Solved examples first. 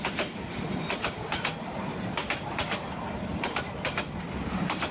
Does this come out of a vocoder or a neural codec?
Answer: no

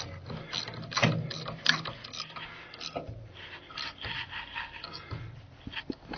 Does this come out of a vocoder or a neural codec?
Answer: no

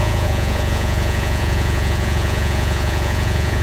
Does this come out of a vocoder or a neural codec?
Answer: yes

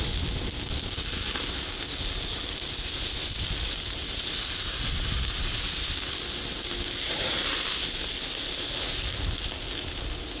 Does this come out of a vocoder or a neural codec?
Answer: no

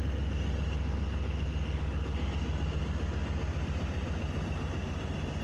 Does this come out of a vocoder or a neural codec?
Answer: no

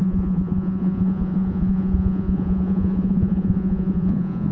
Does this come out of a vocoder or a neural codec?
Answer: yes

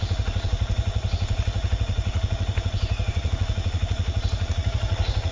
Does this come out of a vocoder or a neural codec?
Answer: yes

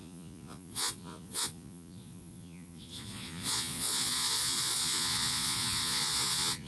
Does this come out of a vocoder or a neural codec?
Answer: yes